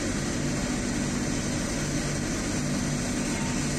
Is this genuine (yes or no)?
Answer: yes